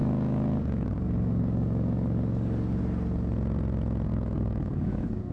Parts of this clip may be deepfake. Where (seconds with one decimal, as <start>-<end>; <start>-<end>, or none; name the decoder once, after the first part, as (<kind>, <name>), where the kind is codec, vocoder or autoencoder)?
0.0-2.8 (codec, DAC); 4.1-5.3